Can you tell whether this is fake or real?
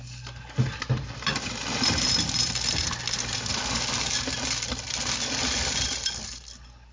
real